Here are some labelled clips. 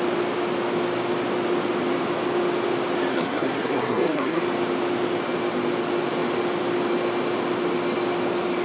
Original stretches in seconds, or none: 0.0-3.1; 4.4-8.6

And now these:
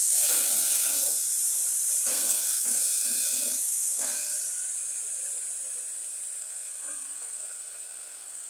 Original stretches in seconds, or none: 1.3-2.1; 4.4-6.4